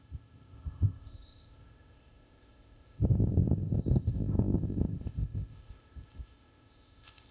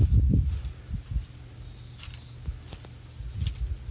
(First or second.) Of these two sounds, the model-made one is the first